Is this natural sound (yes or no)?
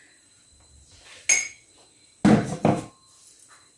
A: yes